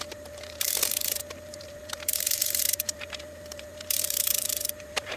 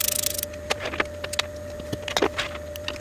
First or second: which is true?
second